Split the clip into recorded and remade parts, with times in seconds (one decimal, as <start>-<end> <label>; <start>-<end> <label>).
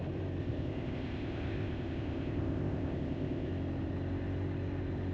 0.0-0.4 recorded; 0.4-3.5 remade; 3.5-5.1 recorded